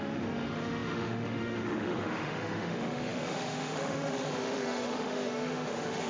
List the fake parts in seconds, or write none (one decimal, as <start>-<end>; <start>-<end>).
0.0-6.1